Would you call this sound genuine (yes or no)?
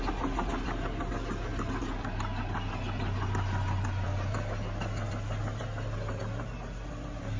yes